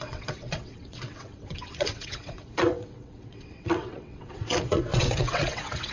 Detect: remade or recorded remade